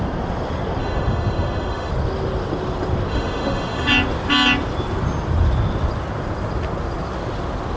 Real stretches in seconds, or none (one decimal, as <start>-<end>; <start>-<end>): 0.0-0.8; 1.9-3.1; 3.9-7.8